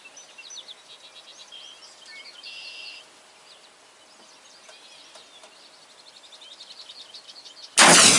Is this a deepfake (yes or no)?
no